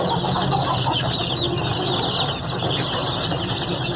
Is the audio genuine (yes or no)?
yes